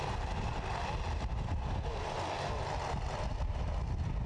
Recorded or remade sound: recorded